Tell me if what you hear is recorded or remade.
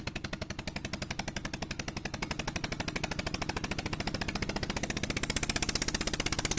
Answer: recorded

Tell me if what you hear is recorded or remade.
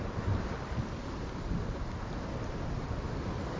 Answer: recorded